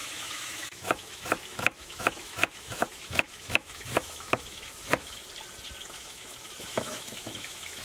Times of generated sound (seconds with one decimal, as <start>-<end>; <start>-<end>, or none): 0.0-5.2; 5.8-7.8